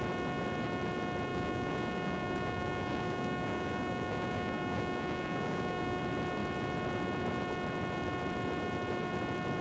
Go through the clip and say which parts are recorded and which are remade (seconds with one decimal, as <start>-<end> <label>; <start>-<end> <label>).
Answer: 0.0-1.3 recorded; 1.3-6.0 remade; 6.0-9.6 recorded